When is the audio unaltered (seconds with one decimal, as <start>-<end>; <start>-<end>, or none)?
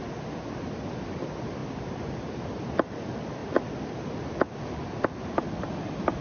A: 0.0-6.2